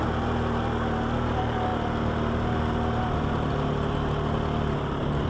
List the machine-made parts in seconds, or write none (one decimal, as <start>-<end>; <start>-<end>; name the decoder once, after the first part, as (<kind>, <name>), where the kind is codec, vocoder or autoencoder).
none